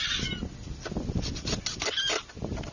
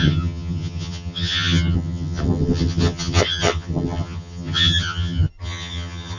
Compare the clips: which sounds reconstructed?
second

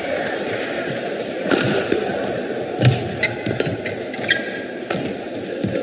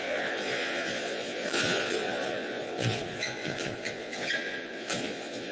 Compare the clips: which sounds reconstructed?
second